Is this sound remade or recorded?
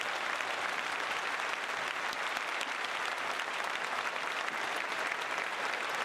remade